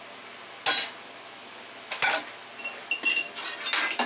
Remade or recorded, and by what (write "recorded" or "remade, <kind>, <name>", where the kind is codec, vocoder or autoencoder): recorded